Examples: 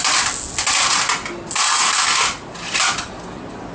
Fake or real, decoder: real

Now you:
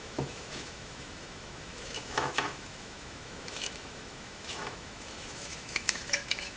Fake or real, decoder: fake, autoencoder, DAC-VAE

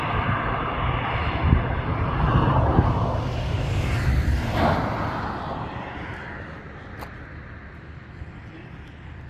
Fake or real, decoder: real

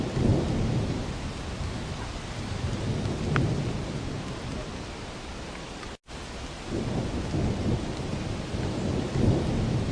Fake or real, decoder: real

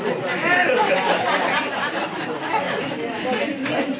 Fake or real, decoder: real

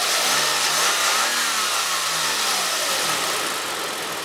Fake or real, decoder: real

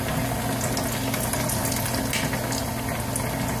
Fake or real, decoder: real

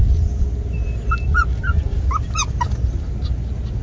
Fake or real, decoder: real